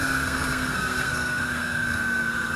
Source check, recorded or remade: remade